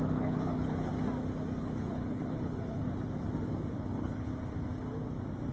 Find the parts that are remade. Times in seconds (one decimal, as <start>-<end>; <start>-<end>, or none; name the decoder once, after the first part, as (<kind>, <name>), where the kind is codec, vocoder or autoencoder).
0.0-0.9 (codec, HILCodec); 1.6-2.8; 3.7-4.3